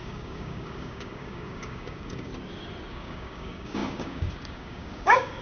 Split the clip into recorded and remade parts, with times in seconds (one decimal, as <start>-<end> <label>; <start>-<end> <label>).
0.0-2.3 remade; 2.3-2.9 recorded; 2.9-5.4 remade